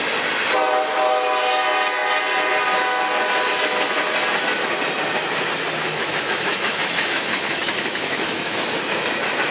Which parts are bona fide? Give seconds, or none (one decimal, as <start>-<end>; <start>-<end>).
0.0-5.8; 8.8-9.5